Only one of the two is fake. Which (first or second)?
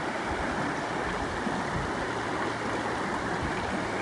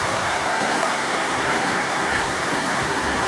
second